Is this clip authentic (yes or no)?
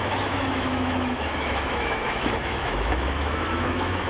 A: no